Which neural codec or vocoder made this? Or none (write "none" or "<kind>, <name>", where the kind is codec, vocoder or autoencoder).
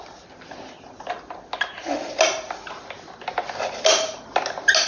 none